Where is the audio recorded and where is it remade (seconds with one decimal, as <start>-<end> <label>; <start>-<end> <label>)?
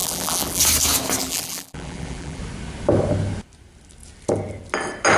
0.0-0.6 remade; 0.6-1.2 recorded; 1.2-2.4 remade; 2.4-5.2 recorded